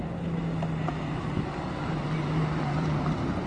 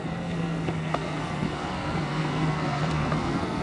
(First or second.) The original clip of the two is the first